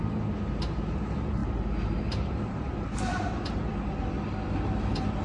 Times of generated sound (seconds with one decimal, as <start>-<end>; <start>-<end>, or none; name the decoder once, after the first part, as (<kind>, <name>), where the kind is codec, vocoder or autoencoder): none